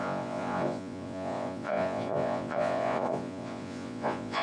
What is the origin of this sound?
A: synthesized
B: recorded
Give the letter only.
A